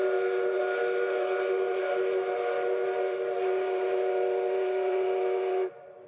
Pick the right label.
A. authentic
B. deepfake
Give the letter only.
A